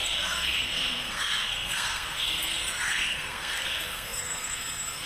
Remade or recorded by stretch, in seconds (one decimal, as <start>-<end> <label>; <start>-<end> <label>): 0.0-5.1 remade